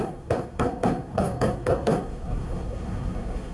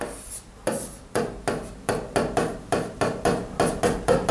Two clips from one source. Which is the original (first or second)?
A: second